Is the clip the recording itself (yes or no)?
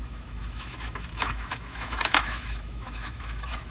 no